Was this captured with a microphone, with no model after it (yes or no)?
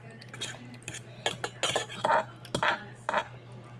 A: yes